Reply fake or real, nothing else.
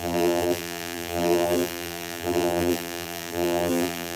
fake